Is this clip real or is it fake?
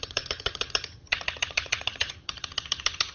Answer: fake